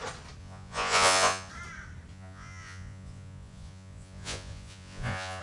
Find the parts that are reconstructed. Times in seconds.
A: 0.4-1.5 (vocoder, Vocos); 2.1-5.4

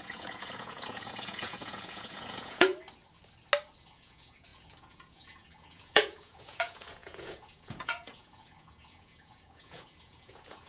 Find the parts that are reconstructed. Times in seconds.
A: 0.0-2.7 (vocoder, Vocos); 3.8-10.7

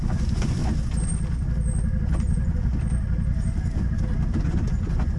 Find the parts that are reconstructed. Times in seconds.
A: 0.0-0.6 (vocoder, Vocos); 2.0-2.7; 4.4-5.2

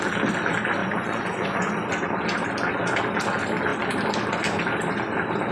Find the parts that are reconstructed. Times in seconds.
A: 0.8-1.7 (vocoder, Vocos)